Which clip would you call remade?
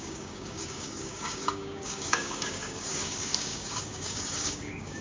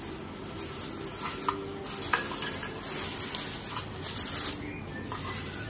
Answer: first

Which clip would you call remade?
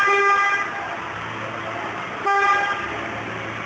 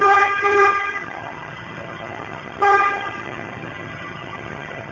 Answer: second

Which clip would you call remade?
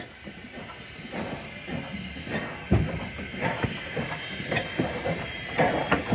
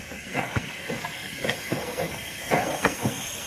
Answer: second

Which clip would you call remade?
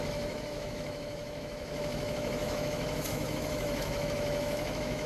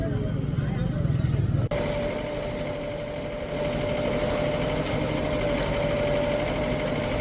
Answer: first